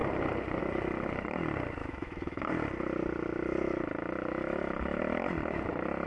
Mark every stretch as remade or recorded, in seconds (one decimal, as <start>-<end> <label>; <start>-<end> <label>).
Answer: 0.0-1.8 recorded; 1.8-2.5 remade; 2.5-4.4 recorded; 4.4-5.0 remade; 5.0-6.1 recorded